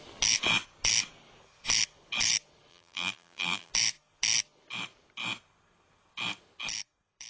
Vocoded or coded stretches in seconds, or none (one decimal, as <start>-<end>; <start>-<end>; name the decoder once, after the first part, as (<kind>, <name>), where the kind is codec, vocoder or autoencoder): 2.7-3.7 (vocoder, BigVGAN v2)